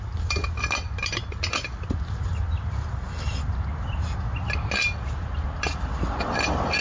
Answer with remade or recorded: recorded